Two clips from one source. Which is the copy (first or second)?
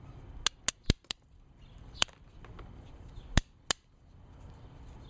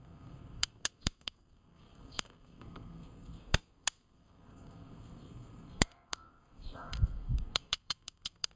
second